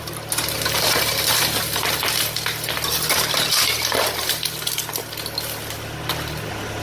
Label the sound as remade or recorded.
recorded